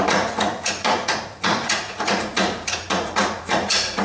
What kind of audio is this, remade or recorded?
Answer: remade